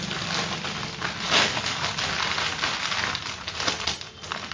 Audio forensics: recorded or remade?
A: recorded